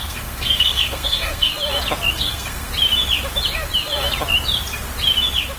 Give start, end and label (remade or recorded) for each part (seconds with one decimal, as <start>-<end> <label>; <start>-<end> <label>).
0.0-1.5 remade; 1.5-2.1 recorded; 2.1-2.7 remade; 2.7-5.6 recorded